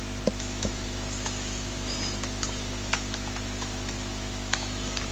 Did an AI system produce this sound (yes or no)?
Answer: yes